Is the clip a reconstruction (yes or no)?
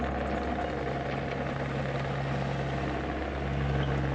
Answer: no